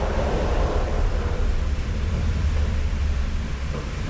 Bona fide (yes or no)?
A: no